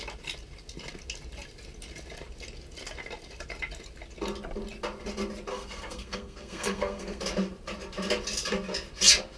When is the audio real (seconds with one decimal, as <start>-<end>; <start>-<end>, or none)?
0.0-5.5; 7.2-9.4